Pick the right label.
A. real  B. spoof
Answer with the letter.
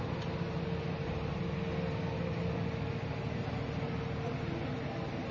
A